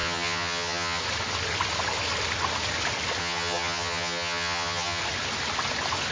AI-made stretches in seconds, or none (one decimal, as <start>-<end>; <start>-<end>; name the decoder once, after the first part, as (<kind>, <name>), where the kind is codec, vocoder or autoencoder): 0.0-1.0 (vocoder, HiFi-GAN); 3.2-5.0